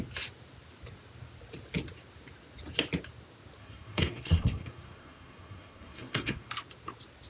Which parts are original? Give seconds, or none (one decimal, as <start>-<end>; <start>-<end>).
0.0-3.6; 6.5-7.3